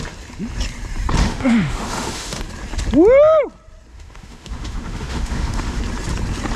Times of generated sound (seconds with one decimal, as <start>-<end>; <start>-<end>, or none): 1.2-2.4; 3.9-5.8